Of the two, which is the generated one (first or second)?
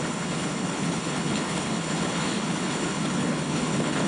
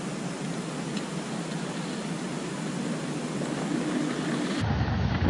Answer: first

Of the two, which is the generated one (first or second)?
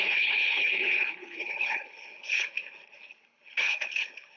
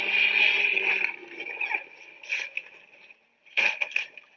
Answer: first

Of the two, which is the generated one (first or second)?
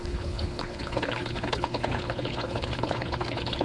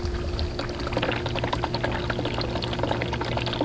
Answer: first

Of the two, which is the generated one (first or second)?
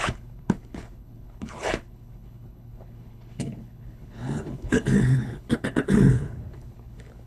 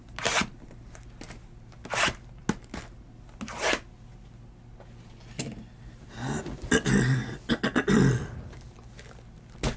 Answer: first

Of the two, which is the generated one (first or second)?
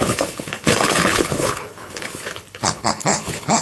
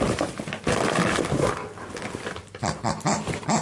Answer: first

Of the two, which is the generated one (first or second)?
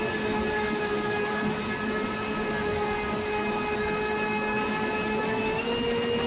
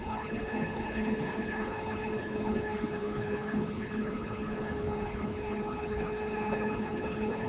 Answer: second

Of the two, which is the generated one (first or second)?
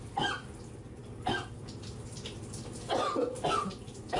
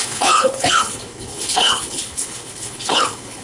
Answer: second